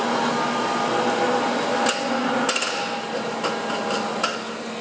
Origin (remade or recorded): recorded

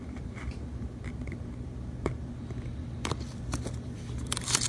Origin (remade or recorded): remade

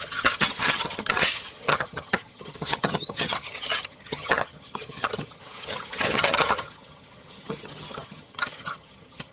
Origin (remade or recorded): remade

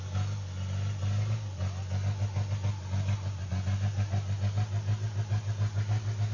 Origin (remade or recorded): recorded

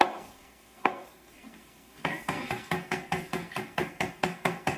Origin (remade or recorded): remade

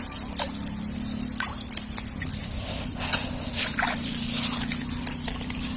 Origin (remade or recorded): recorded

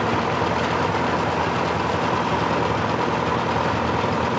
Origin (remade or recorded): recorded